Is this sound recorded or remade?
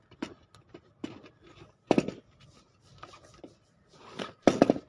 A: recorded